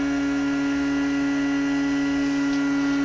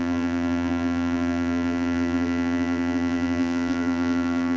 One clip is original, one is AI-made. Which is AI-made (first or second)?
second